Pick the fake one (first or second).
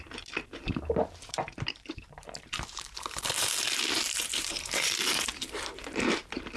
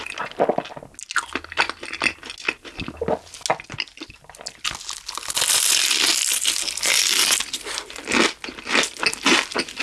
first